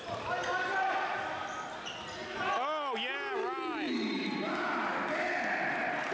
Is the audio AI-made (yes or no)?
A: no